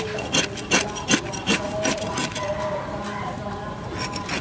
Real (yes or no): yes